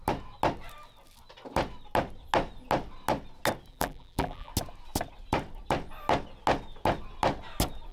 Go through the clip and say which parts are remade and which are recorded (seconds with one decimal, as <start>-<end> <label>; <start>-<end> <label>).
0.0-3.7 recorded; 3.7-4.5 remade; 4.5-7.9 recorded